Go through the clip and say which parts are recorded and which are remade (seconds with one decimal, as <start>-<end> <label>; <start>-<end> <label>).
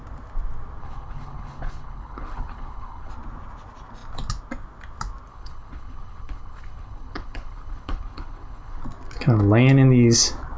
0.0-0.8 recorded; 0.8-3.1 remade; 3.1-5.3 recorded; 5.3-8.8 remade; 8.8-10.6 recorded